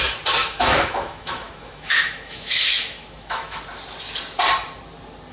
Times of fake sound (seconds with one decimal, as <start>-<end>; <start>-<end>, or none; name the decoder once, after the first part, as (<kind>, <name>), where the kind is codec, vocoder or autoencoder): 0.4-3.6 (autoencoder, DAC-VAE)